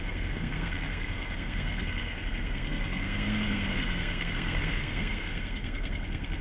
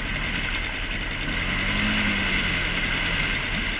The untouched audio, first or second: second